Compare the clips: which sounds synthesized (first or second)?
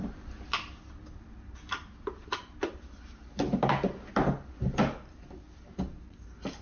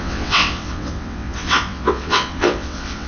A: second